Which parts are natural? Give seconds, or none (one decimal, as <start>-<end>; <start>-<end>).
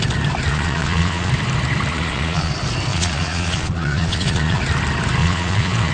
0.0-0.5; 1.3-1.9; 2.5-2.9; 4.6-5.2